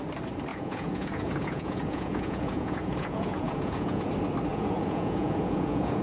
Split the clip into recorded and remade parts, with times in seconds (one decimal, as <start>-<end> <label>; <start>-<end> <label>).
0.0-0.5 recorded; 0.5-4.1 remade; 4.1-4.5 recorded; 4.5-6.0 remade